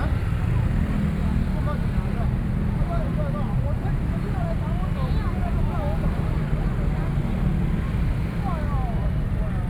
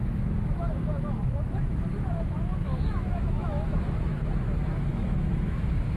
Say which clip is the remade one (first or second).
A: second